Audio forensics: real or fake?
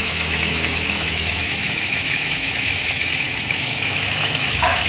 fake